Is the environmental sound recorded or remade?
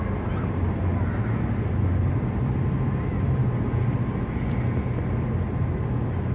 recorded